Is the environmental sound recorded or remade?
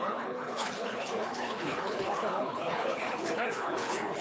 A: remade